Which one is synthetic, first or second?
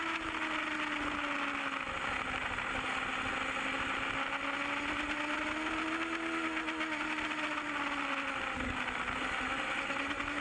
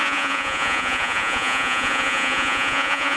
second